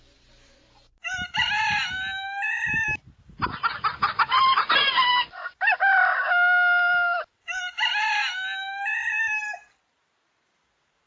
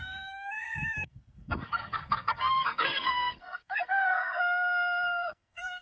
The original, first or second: first